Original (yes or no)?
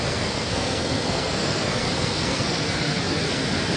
no